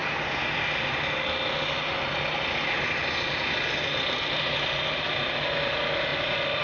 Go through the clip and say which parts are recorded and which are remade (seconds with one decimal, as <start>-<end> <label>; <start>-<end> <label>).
0.0-6.6 recorded

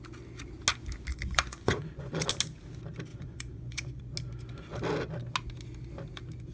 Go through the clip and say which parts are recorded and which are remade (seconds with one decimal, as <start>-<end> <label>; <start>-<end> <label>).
0.0-1.1 recorded; 1.1-2.3 remade; 2.3-3.1 recorded; 3.1-4.0 remade; 4.0-6.5 recorded

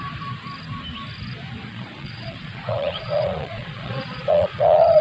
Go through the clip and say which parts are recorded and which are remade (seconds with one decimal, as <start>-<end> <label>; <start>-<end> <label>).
0.0-1.7 recorded; 1.7-5.0 remade

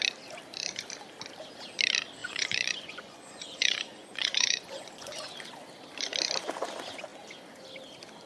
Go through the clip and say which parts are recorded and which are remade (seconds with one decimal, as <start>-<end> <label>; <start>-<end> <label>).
0.0-2.2 recorded; 2.2-5.3 remade; 5.3-8.3 recorded

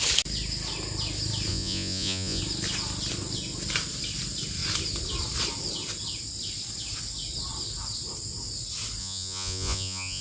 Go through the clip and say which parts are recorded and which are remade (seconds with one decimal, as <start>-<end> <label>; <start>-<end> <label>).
0.0-1.5 recorded; 1.5-2.4 remade; 2.4-9.0 recorded; 9.0-10.2 remade

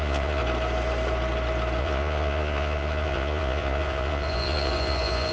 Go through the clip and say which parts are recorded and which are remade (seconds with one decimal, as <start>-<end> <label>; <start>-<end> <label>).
0.0-0.4 remade; 0.4-1.8 recorded; 1.8-5.3 remade

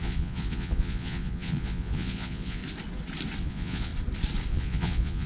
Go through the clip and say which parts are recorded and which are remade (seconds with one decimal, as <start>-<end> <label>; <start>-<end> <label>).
0.0-2.6 remade; 2.6-3.4 recorded; 3.4-3.9 remade; 3.9-4.5 recorded; 4.5-5.3 remade